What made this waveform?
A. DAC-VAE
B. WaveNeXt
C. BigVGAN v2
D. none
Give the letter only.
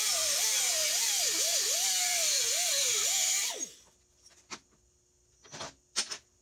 D